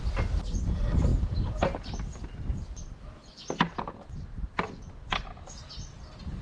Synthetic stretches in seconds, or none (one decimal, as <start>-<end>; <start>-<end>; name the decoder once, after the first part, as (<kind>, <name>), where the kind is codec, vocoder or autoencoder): none